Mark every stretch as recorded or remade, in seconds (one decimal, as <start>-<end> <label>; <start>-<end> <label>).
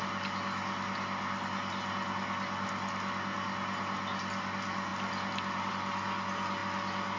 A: 0.0-7.2 recorded